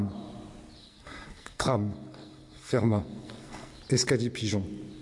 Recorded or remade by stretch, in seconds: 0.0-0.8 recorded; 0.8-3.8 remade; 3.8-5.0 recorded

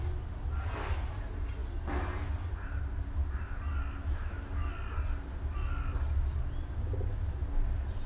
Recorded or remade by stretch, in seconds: 0.0-4.0 recorded; 4.0-4.7 remade; 4.7-8.1 recorded

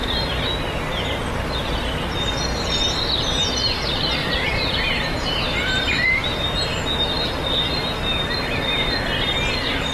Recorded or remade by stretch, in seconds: 0.0-4.2 recorded; 4.2-4.8 remade; 4.8-6.2 recorded; 6.2-6.7 remade; 6.7-9.9 recorded

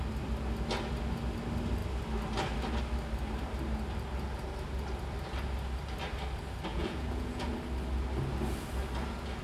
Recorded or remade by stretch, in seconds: 0.0-6.7 recorded; 6.7-7.5 remade; 7.5-9.4 recorded

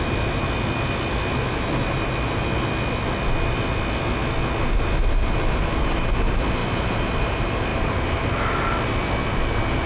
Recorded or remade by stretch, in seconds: 0.0-9.9 recorded

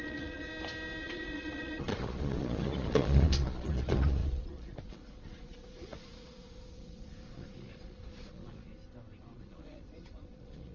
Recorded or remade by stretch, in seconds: 0.0-0.5 remade; 0.5-1.0 recorded; 1.0-8.7 remade; 8.7-9.2 recorded; 9.2-10.7 remade

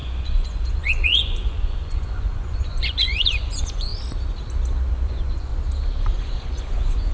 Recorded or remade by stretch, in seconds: 0.0-3.9 remade; 3.9-4.9 recorded; 4.9-5.5 remade; 5.5-6.0 recorded; 6.0-7.1 remade

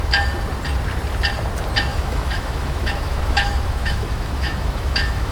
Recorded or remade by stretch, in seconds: 0.0-1.9 recorded; 1.9-5.3 remade